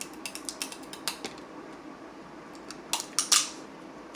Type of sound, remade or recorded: recorded